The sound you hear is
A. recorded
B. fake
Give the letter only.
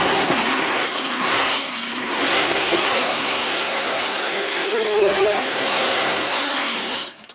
B